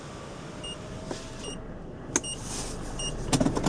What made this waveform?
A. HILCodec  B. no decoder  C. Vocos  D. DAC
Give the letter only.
B